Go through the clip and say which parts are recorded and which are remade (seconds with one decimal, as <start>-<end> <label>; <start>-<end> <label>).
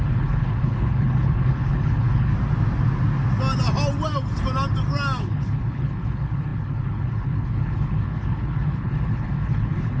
0.0-2.3 remade; 2.3-5.2 recorded; 5.2-10.0 remade